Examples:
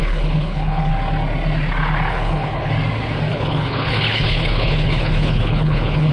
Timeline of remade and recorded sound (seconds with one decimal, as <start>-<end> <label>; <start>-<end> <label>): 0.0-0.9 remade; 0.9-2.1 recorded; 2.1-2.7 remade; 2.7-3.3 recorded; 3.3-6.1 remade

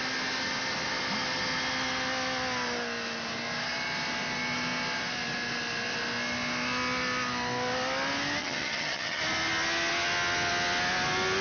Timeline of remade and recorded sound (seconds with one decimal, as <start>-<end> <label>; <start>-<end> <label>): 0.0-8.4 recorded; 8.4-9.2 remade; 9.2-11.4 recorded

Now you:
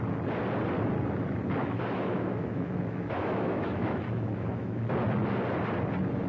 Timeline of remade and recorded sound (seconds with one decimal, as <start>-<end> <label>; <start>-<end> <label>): 0.0-1.6 recorded; 1.6-4.8 remade; 4.8-6.3 recorded

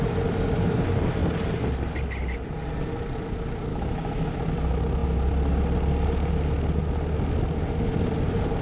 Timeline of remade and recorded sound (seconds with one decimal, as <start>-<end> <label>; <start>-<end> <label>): 0.0-3.7 recorded; 3.7-4.4 remade; 4.4-8.6 recorded